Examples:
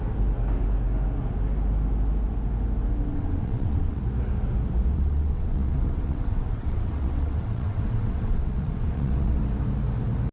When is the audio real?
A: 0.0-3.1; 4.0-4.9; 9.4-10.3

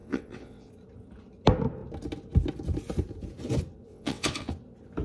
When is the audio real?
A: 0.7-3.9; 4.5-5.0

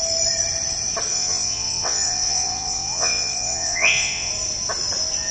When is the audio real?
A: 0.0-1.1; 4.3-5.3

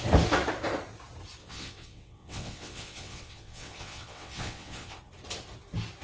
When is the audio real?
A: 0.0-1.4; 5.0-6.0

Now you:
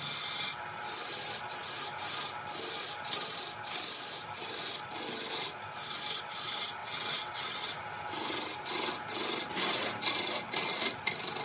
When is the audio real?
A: 0.0-6.8; 7.8-11.4

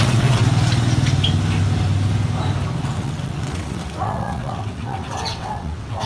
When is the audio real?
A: 0.4-2.8